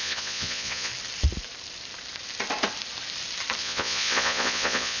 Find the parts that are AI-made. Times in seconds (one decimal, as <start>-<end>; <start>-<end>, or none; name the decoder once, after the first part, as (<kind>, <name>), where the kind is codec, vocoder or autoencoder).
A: 0.0-0.9 (vocoder, Vocos); 3.6-5.0